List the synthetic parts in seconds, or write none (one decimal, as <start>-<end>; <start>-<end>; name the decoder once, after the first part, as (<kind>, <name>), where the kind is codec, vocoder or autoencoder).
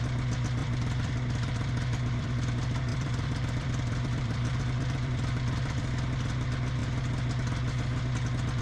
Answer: 0.6-2.5 (vocoder, BigVGAN v2); 2.9-5.8